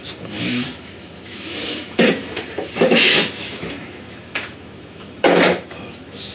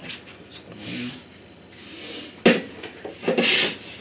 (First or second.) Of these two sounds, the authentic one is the second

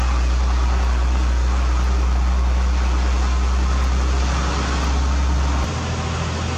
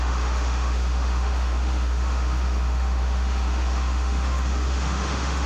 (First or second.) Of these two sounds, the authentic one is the first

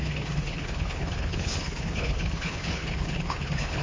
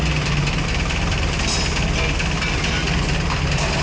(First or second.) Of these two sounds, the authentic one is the second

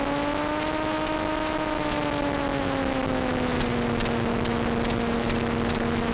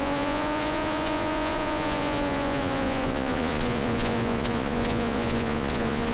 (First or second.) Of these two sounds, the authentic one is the first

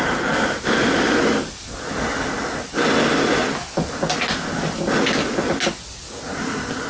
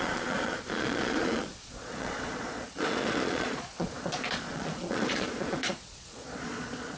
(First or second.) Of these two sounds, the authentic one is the first